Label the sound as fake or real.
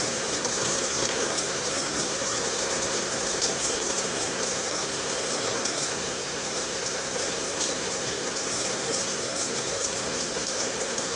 fake